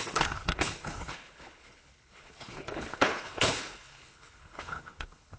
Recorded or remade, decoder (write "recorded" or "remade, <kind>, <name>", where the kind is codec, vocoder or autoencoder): remade, codec, HILCodec